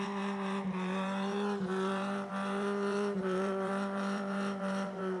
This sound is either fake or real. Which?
fake